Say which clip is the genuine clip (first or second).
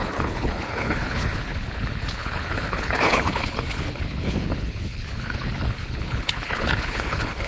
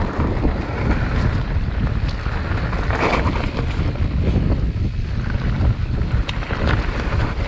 second